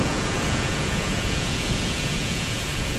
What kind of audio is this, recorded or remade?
remade